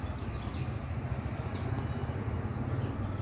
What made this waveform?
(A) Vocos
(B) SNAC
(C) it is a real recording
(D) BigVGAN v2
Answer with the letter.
C